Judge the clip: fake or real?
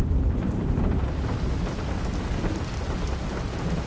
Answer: real